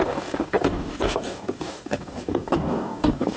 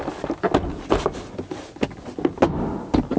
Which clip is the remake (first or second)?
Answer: first